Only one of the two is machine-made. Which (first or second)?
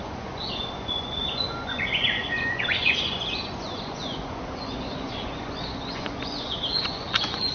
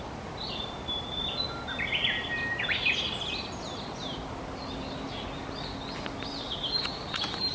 first